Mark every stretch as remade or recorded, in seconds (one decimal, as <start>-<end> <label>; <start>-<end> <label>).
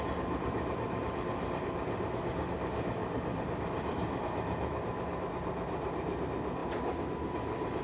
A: 0.0-0.4 recorded; 0.4-1.0 remade; 1.0-3.0 recorded; 3.0-5.2 remade; 5.2-7.8 recorded